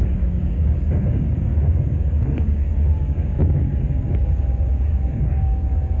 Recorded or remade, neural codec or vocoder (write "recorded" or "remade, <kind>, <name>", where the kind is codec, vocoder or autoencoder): remade, codec, DAC